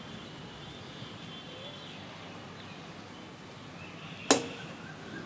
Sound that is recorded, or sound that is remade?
recorded